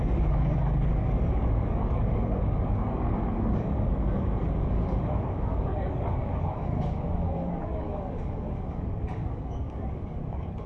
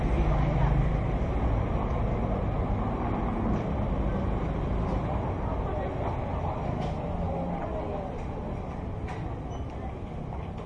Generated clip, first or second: first